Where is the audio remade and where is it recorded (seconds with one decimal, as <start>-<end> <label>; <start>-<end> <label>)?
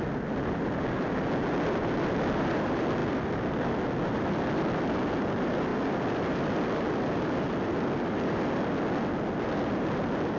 0.0-10.4 recorded